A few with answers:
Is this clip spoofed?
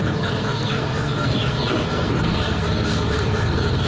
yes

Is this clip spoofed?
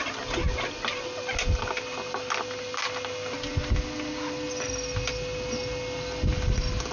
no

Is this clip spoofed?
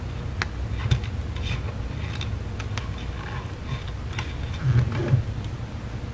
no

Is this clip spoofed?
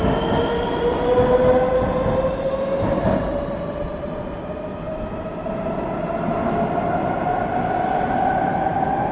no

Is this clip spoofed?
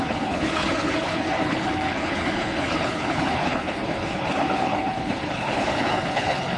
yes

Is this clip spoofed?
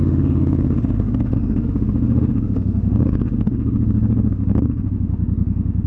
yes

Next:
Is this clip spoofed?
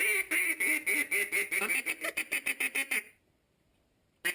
no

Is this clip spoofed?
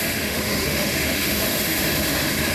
yes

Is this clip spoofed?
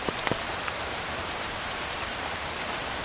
yes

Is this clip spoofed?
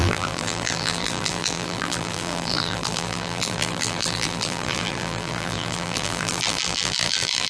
yes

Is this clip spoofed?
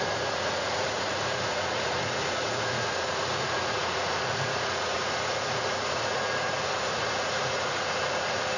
yes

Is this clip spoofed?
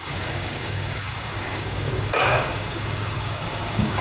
yes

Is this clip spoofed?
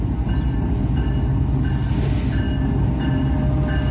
no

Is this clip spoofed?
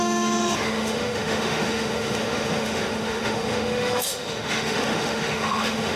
yes